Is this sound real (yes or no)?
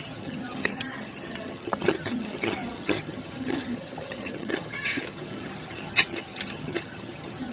no